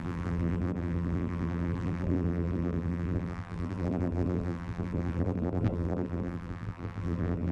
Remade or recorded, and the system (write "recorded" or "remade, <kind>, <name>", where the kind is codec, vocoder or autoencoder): remade, vocoder, BigVGAN v2